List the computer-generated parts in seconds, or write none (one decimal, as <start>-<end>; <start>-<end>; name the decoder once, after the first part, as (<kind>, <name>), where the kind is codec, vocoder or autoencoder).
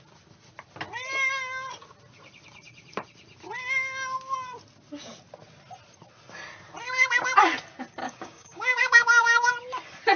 8.0-9.5 (codec, DAC)